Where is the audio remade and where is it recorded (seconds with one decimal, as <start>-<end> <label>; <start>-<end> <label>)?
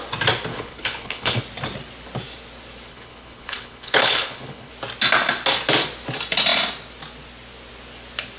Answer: 0.0-0.5 recorded; 0.5-1.4 remade; 1.4-2.9 recorded; 2.9-4.7 remade; 4.7-8.4 recorded